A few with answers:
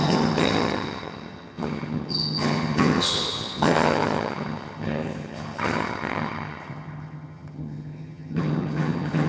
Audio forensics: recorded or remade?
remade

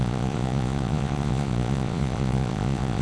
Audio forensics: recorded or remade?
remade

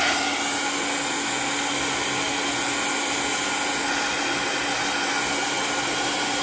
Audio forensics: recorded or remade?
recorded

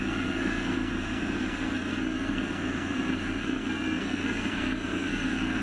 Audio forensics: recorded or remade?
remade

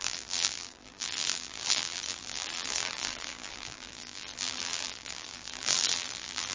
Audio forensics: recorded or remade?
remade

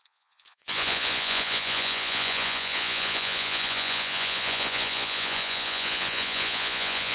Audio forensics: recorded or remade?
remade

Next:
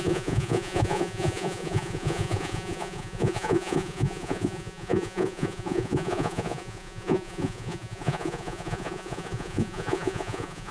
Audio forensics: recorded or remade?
remade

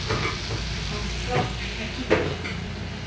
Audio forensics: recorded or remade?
recorded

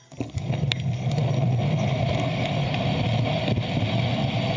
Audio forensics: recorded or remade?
recorded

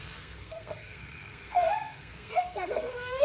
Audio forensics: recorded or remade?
remade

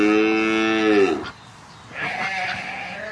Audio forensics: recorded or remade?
recorded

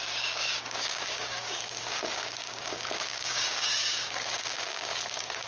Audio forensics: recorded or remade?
remade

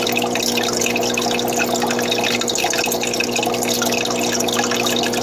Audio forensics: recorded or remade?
recorded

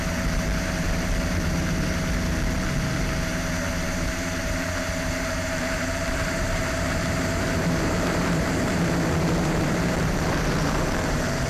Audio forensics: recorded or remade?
remade